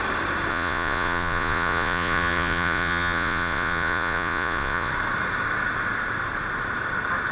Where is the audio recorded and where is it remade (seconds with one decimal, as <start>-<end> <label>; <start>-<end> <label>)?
0.0-0.5 recorded; 0.5-4.9 remade; 4.9-7.3 recorded